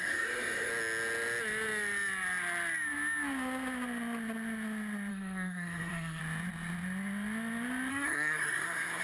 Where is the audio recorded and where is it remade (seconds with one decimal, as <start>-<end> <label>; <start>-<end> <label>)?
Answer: 0.0-0.7 remade; 0.7-5.1 recorded; 5.1-6.2 remade; 6.2-7.9 recorded; 7.9-9.0 remade

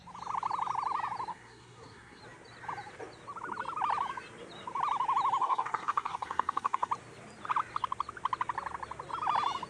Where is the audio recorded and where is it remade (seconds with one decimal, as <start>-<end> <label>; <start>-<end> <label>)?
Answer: 0.0-1.3 recorded; 1.3-2.2 remade; 2.2-5.4 recorded; 5.4-6.9 remade; 6.9-9.7 recorded

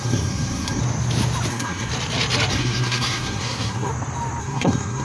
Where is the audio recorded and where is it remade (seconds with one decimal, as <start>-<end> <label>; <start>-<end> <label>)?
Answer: 0.0-0.8 remade; 0.8-1.5 recorded; 1.5-1.9 remade; 1.9-2.5 recorded; 2.5-3.9 remade; 3.9-4.4 recorded; 4.4-5.0 remade

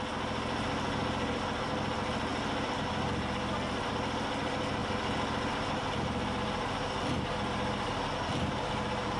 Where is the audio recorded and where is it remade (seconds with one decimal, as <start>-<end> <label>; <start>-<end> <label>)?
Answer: 0.0-9.2 recorded

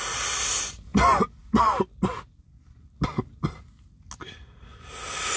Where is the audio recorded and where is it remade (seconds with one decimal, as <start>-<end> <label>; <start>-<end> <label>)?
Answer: 0.0-5.4 recorded

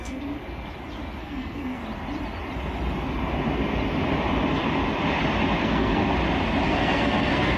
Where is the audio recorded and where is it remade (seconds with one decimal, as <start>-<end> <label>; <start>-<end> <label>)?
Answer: 0.0-0.4 remade; 0.4-1.2 recorded; 1.2-1.8 remade; 1.8-5.6 recorded; 5.6-6.0 remade; 6.0-6.6 recorded; 6.6-7.6 remade